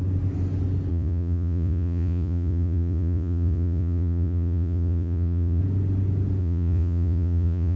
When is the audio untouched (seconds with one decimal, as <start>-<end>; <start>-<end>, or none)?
0.0-0.9; 5.6-6.4